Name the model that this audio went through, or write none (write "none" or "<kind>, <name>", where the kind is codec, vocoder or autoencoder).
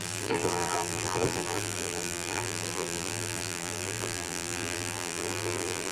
vocoder, BigVGAN v2